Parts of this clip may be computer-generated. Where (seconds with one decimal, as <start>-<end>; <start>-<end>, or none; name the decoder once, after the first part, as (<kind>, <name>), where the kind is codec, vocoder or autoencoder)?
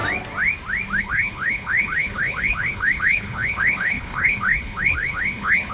1.0-5.7 (codec, HILCodec)